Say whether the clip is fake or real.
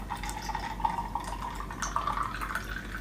real